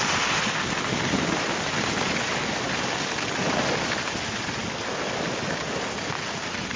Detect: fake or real real